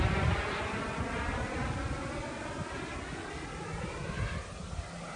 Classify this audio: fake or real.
real